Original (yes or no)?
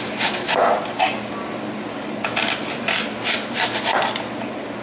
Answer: yes